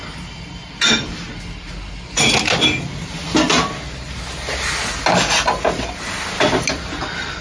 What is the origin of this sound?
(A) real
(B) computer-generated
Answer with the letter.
A